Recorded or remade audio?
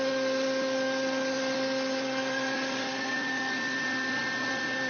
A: recorded